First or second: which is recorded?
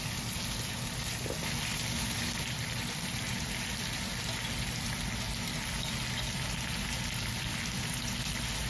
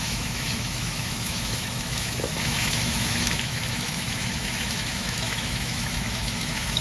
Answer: first